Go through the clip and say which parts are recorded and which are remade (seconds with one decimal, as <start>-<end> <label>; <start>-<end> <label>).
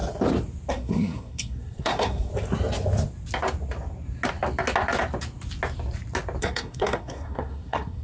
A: 0.0-0.7 recorded; 0.7-2.3 remade; 2.3-6.4 recorded; 6.4-8.0 remade